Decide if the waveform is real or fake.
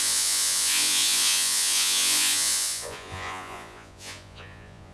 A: fake